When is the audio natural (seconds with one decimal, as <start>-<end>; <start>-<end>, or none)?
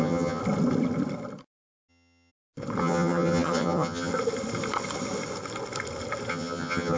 0.4-1.9; 2.3-2.8; 4.1-6.3